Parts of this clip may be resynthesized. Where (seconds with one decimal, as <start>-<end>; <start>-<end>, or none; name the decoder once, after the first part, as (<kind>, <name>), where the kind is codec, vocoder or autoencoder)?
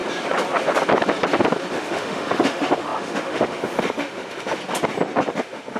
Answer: 1.7-4.6 (autoencoder, DAC-VAE); 5.3-5.8